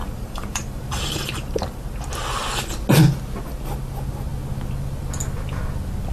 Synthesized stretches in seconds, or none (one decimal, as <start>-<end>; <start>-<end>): 0.0-1.8